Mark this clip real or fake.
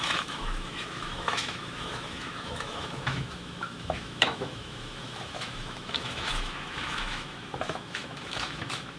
fake